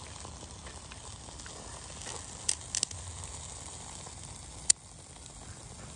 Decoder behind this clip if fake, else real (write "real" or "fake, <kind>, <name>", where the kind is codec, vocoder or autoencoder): real